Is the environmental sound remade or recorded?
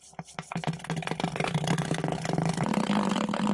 recorded